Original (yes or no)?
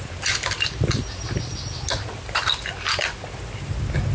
yes